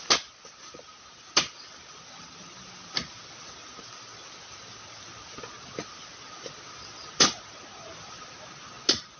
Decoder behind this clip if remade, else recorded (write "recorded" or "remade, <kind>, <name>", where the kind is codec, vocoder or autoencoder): recorded